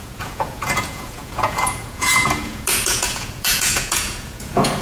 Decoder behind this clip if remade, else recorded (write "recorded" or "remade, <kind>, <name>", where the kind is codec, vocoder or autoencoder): remade, vocoder, Vocos